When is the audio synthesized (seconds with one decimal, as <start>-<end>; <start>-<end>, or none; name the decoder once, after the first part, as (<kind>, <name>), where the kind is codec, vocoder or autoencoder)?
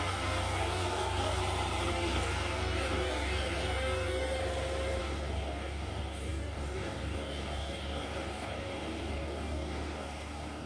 0.0-1.4 (codec, DAC); 1.9-4.4; 5.0-10.7